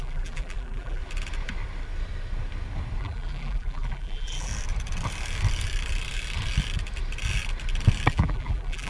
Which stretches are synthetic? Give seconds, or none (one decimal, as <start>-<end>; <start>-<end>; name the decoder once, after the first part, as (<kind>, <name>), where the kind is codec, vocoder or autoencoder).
0.0-1.0 (vocoder, BigVGAN v2); 3.0-4.5; 8.1-8.9